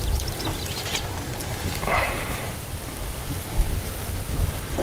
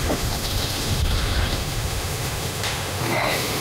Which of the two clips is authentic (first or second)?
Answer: first